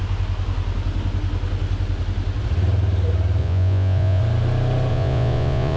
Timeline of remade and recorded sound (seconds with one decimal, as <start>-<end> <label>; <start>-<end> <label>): 0.0-3.4 recorded; 3.4-4.2 remade; 4.2-4.9 recorded; 4.9-5.8 remade